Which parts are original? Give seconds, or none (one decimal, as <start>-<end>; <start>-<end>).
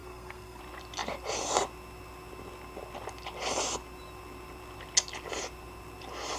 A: 0.6-6.4